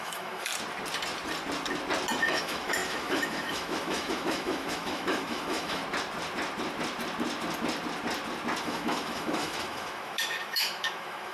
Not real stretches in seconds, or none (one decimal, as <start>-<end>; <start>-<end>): 0.0-0.5; 2.2-5.8; 8.6-11.3